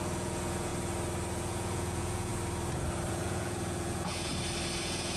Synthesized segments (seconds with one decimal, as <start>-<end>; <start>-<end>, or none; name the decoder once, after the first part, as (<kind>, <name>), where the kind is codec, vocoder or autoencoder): 0.0-0.7 (vocoder, Vocos); 1.4-2.3; 3.1-4.3; 4.8-5.2